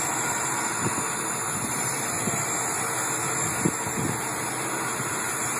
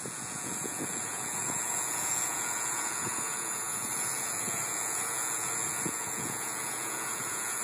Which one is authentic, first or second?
first